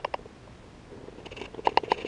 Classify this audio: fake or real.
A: real